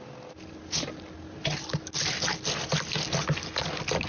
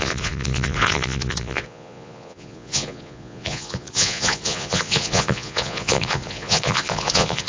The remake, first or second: second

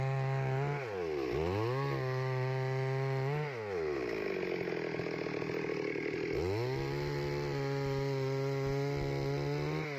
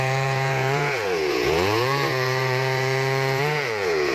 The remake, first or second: second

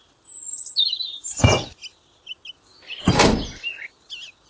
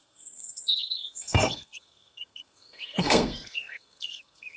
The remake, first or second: second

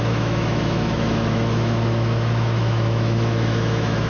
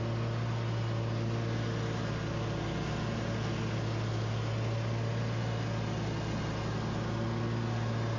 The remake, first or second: first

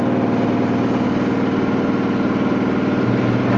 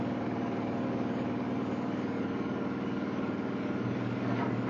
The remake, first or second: second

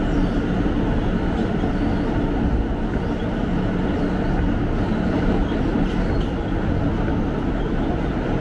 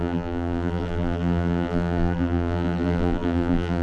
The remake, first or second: second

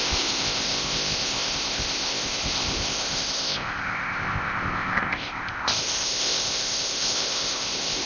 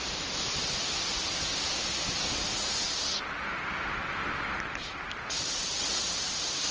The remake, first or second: first